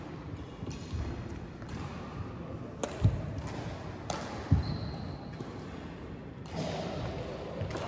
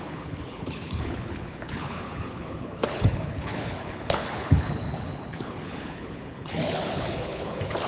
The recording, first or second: first